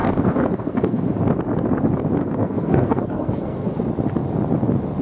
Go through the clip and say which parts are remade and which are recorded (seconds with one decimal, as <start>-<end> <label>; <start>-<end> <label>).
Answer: 0.0-1.0 remade; 1.0-2.2 recorded; 2.2-3.8 remade; 3.8-5.0 recorded